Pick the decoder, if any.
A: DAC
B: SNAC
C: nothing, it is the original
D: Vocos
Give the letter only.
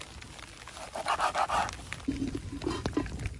C